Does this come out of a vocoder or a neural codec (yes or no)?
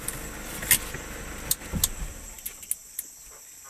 no